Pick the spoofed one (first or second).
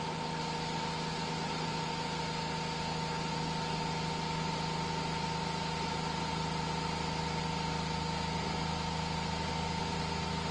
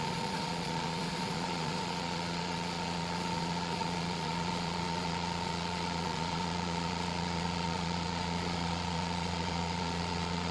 second